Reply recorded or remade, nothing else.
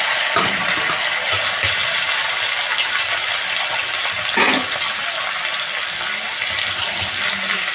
recorded